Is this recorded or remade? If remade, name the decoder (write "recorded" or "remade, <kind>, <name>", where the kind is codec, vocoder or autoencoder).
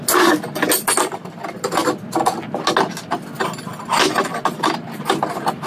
recorded